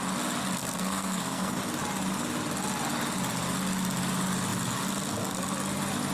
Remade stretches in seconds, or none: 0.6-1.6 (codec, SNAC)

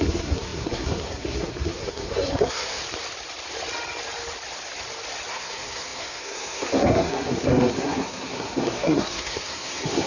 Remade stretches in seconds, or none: 0.0-2.8 (codec, SNAC); 5.3-10.1

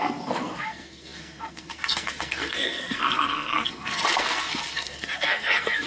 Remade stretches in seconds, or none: 0.0-5.9 (codec, SNAC)

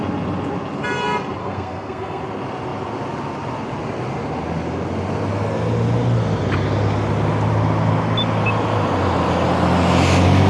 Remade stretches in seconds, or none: 1.4-2.2 (codec, SNAC)